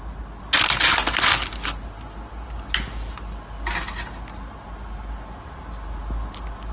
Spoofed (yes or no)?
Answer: no